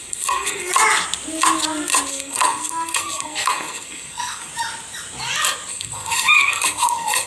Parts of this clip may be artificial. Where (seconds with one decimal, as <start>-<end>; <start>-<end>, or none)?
0.0-0.7; 2.1-4.5; 5.7-7.3